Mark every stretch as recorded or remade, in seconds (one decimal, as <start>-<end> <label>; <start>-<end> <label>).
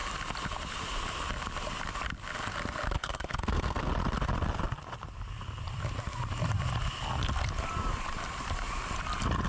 0.0-3.0 recorded; 3.0-3.9 remade; 3.9-9.5 recorded